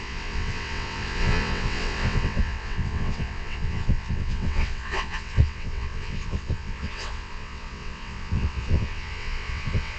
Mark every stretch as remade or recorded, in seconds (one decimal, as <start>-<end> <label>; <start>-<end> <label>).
0.0-10.0 remade